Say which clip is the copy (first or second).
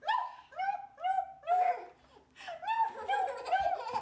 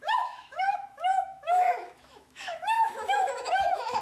second